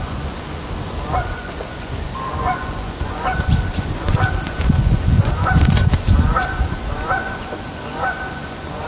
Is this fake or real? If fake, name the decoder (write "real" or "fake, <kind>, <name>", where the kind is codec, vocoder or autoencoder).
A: fake, vocoder, Vocos